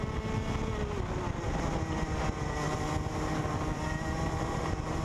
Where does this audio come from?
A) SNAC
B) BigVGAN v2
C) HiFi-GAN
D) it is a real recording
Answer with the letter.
D